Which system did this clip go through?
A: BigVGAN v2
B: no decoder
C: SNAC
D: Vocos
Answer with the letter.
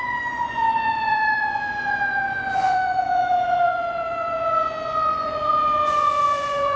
D